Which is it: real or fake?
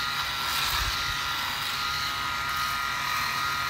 real